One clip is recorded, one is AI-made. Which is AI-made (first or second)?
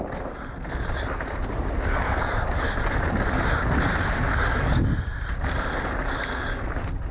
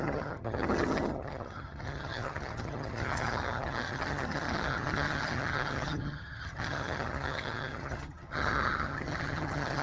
second